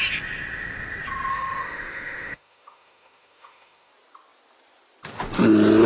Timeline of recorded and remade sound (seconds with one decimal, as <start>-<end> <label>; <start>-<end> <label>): 0.0-1.3 recorded; 1.3-3.9 remade; 3.9-5.9 recorded